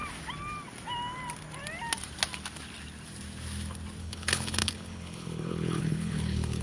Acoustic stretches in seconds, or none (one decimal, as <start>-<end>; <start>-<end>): 0.0-4.0